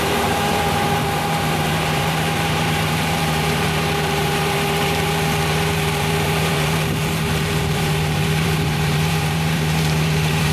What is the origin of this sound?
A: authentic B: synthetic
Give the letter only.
B